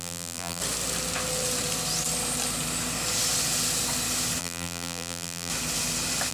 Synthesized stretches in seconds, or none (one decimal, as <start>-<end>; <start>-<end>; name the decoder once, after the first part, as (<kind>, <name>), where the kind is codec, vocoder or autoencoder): 0.0-0.6 (vocoder, BigVGAN v2); 4.4-5.5